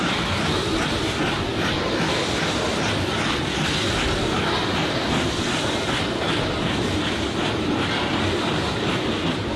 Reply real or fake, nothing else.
real